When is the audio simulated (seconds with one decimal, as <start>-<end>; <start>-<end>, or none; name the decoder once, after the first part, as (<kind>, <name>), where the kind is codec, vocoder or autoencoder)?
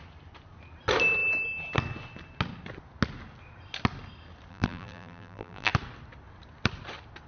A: 4.5-5.7 (vocoder, BigVGAN v2)